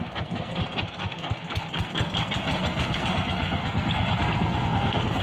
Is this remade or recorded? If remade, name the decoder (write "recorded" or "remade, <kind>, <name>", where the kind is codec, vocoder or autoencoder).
remade, codec, SNAC